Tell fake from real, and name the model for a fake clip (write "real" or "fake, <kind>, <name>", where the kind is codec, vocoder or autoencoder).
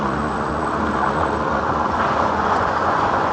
fake, vocoder, Vocos